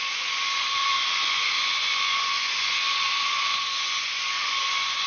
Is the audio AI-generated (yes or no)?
yes